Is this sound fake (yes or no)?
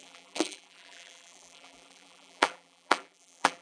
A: yes